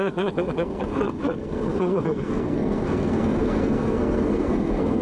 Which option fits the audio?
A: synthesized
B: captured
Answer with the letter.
A